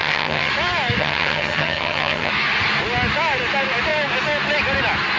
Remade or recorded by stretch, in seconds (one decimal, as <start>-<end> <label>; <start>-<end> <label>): 0.0-0.5 remade; 0.5-1.0 recorded; 1.0-2.3 remade; 2.3-5.2 recorded